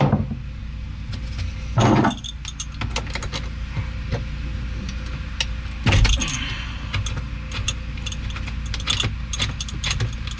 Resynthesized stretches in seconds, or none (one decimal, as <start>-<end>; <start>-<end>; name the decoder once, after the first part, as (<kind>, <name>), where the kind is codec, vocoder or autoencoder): none